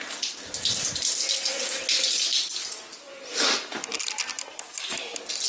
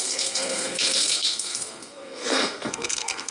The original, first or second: first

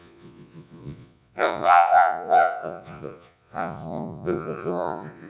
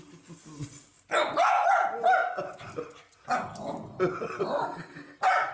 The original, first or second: second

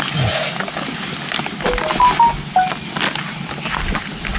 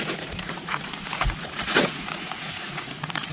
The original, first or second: first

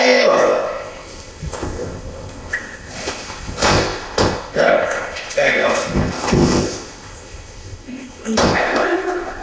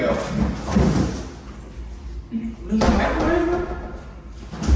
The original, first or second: second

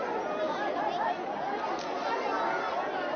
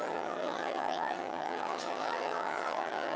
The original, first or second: first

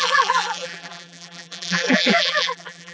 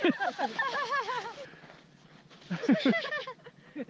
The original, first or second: second